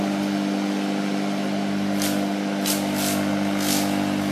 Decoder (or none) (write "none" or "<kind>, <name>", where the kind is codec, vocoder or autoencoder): none